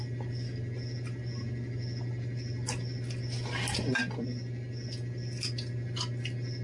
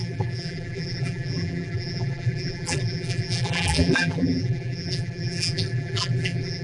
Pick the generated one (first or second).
second